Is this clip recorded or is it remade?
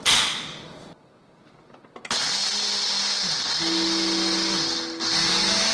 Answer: recorded